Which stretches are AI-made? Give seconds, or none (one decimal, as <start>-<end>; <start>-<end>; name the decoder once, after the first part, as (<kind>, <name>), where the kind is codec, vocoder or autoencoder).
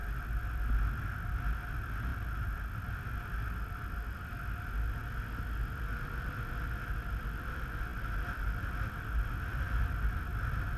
none